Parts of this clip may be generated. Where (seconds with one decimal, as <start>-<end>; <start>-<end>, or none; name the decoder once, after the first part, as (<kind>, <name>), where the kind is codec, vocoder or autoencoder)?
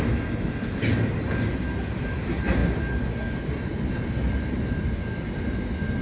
none